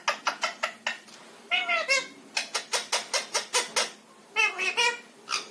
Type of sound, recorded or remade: recorded